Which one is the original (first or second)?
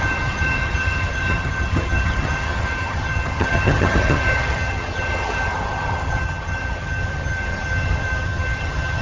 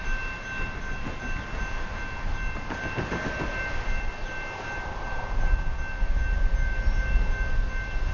second